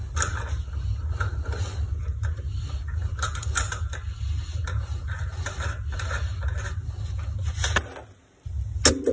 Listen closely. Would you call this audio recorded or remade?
recorded